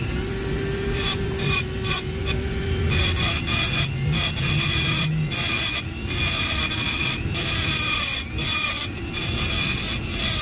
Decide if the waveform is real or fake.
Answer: real